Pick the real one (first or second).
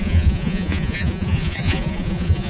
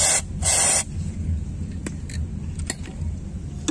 second